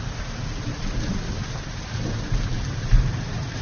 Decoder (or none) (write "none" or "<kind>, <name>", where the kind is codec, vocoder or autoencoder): none